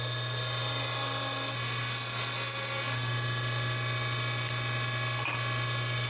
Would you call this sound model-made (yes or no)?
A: no